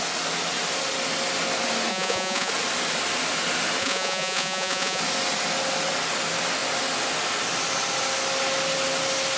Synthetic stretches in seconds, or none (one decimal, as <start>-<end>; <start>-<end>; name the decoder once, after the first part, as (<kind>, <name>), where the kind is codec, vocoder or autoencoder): 1.9-2.5 (vocoder, Vocos); 3.8-5.0

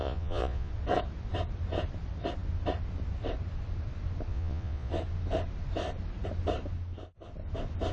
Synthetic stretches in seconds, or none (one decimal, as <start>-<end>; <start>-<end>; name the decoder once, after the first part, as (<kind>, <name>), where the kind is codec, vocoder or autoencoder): 0.0-0.7 (vocoder, Vocos); 4.3-4.9